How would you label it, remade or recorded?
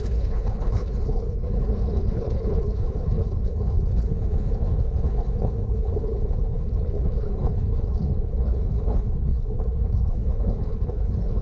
remade